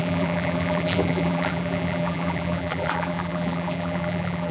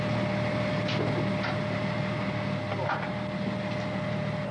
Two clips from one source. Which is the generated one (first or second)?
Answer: first